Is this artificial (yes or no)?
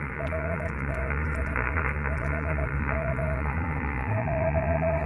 yes